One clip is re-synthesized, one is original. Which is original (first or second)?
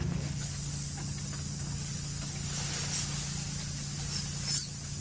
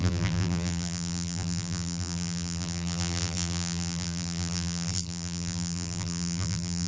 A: first